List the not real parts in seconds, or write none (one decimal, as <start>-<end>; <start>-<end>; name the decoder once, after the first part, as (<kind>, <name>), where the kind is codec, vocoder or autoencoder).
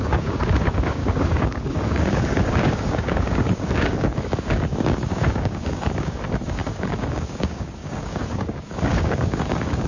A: 0.0-9.9 (codec, DAC)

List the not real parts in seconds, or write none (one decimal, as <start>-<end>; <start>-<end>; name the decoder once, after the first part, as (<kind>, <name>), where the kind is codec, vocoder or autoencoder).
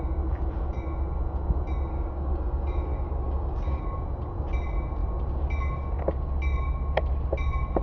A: 1.9-3.8 (codec, DAC)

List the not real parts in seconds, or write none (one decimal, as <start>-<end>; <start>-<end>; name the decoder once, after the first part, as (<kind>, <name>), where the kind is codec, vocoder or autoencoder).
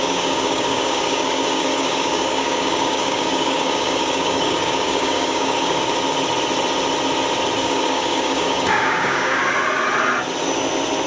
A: 0.0-5.9 (codec, DAC); 7.6-9.4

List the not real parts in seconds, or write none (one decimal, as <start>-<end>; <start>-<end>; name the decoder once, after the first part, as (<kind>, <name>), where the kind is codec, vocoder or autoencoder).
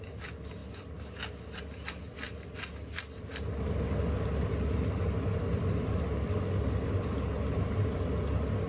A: none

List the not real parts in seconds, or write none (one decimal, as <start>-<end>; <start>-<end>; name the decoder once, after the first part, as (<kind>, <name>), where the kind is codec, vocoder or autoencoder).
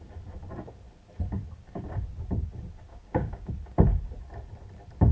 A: 2.9-3.5 (codec, DAC)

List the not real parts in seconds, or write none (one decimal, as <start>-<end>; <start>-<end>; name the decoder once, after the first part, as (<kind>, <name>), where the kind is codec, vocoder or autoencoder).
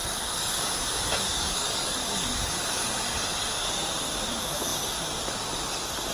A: 0.0-3.7 (codec, DAC)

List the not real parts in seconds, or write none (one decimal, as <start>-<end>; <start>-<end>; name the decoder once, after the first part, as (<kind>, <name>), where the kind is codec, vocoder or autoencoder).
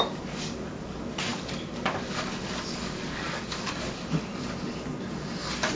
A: 0.0-4.3 (codec, DAC)